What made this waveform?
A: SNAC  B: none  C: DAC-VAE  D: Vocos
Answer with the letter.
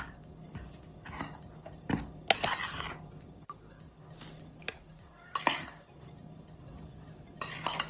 B